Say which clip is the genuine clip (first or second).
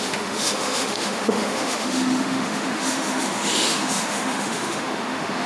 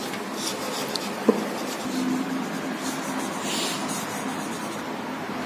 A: second